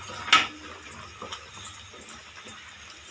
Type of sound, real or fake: real